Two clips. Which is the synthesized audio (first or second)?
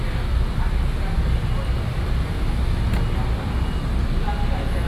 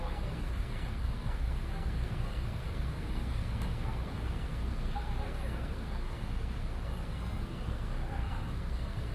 second